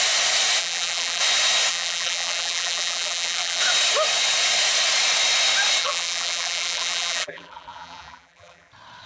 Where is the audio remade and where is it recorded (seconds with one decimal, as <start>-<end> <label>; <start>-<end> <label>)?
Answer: 0.0-0.6 recorded; 0.6-1.2 remade; 1.2-1.7 recorded; 1.7-3.6 remade; 3.6-5.8 recorded; 5.8-8.7 remade; 8.7-9.1 recorded